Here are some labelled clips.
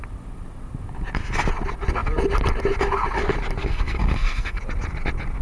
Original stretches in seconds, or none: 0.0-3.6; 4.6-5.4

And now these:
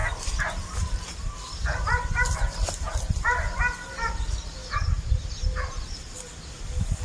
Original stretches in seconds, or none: 0.7-7.0

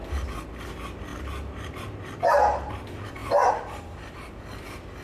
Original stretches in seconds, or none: 0.0-5.0